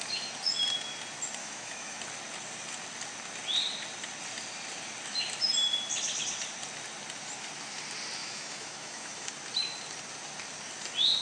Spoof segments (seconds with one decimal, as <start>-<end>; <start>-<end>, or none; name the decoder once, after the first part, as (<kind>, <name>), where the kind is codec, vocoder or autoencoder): 1.4-2.0 (autoencoder, DAC-VAE); 8.2-9.3